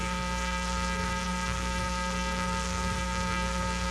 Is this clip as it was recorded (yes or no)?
no